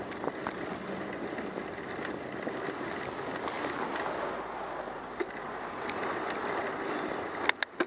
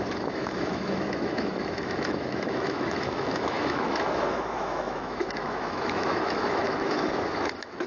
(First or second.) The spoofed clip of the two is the second